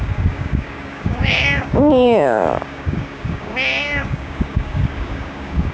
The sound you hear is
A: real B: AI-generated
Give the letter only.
B